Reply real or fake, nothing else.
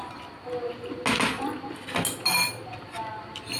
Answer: real